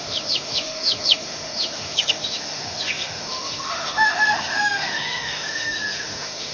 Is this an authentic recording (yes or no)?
no